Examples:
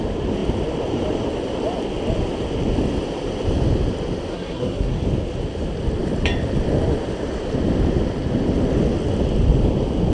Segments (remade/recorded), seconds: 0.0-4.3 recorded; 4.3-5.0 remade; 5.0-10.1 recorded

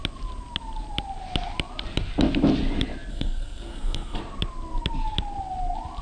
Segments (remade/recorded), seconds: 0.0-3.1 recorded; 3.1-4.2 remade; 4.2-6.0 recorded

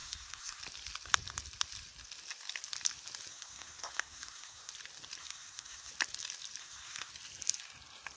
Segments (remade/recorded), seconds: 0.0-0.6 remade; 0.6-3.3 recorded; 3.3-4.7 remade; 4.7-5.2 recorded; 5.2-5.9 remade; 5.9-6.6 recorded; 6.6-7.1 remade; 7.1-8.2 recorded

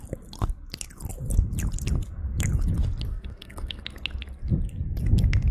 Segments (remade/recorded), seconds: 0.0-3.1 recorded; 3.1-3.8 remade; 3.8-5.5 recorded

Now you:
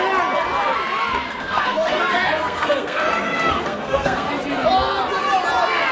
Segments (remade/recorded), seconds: 0.0-1.1 recorded; 1.1-4.3 remade; 4.3-5.9 recorded

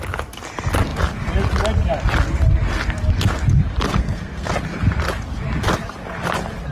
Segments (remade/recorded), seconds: 0.0-3.9 recorded; 3.9-4.5 remade; 4.5-6.7 recorded

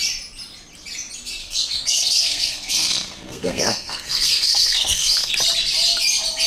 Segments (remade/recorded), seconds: 0.0-1.4 recorded; 1.4-5.3 remade; 5.3-6.5 recorded